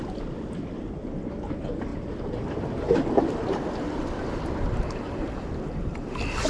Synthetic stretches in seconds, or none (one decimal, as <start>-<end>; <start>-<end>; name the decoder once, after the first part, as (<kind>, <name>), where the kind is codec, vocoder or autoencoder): none

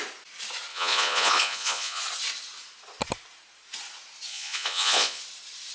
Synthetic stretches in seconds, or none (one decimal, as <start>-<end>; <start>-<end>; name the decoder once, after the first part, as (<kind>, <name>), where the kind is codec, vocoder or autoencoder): 0.7-2.0 (vocoder, Vocos); 4.3-5.2

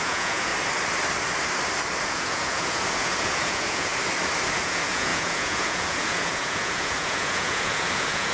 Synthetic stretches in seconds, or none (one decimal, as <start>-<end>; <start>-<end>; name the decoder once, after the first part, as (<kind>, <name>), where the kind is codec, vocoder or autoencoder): 0.0-0.5 (vocoder, Vocos); 2.0-3.9; 4.5-8.3

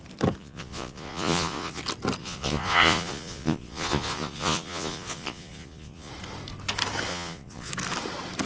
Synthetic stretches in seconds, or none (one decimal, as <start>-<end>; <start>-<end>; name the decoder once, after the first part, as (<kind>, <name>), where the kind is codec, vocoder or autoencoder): 0.4-1.8 (vocoder, Vocos); 2.2-6.1; 7.1-7.7

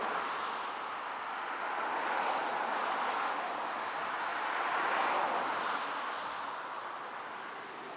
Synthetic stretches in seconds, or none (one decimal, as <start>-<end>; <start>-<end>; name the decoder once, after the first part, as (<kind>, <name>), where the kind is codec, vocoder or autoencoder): none

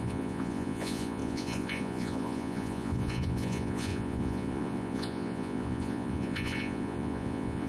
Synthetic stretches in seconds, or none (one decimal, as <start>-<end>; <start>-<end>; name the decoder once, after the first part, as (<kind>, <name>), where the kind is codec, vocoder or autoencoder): 0.0-7.7 (vocoder, Vocos)